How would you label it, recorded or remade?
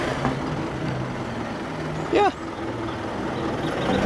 recorded